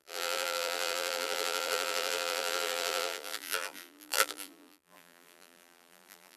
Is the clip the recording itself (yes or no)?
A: no